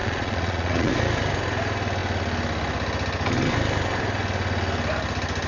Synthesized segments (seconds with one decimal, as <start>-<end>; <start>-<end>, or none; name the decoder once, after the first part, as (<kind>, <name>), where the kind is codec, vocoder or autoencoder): 0.0-0.9 (vocoder, Vocos)